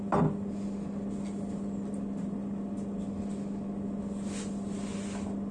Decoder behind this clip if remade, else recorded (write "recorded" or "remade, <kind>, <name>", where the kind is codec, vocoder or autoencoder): recorded